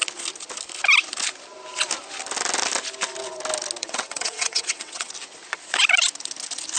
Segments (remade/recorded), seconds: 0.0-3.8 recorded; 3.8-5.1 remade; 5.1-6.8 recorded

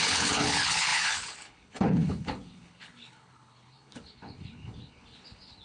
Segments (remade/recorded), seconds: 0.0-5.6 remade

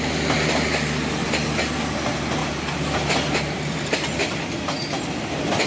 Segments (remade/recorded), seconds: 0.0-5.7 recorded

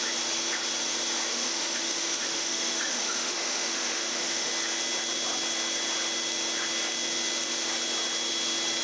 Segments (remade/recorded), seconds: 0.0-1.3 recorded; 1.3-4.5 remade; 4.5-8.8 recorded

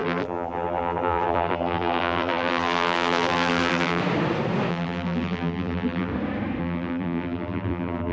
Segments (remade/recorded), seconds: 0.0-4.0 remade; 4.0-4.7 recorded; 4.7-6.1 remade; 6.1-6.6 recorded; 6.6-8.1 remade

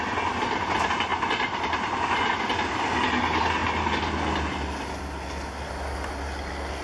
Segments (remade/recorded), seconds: 0.0-6.8 recorded

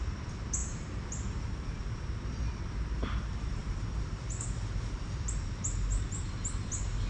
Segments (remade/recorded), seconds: 0.0-7.1 remade

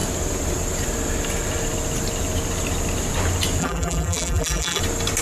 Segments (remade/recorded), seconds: 0.0-3.6 recorded; 3.6-4.8 remade; 4.8-5.2 recorded